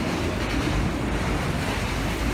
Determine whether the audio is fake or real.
real